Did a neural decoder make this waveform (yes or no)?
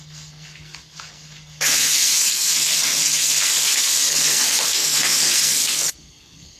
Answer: yes